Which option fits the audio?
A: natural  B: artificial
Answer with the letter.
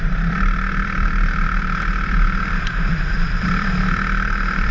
B